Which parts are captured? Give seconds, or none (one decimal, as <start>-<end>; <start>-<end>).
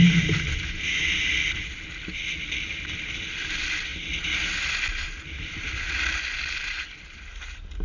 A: 0.0-7.8